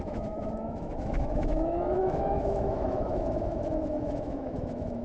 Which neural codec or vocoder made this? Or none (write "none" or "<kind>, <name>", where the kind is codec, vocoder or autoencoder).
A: autoencoder, DAC-VAE